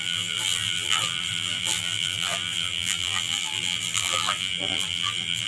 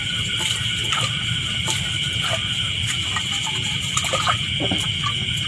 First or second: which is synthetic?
first